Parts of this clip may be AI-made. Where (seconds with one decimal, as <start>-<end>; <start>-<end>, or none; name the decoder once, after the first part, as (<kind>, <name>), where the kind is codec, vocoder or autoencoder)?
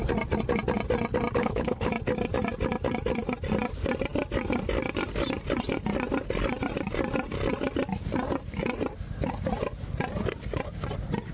1.4-1.9 (codec, HILCodec)